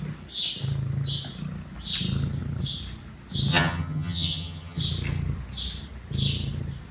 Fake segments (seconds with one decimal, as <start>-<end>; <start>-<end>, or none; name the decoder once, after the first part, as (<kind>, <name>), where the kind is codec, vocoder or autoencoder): 3.5-4.8 (vocoder, HiFi-GAN)